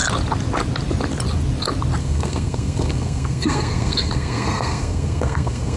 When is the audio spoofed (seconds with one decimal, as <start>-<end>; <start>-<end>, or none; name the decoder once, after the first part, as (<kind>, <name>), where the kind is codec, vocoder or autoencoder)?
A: 2.0-5.8 (codec, SNAC)